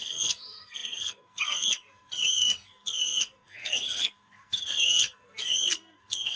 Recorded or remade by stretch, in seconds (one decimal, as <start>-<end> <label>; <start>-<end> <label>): 0.0-6.4 remade